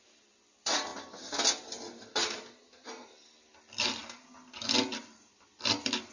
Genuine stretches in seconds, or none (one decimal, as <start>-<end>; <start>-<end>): 0.9-2.6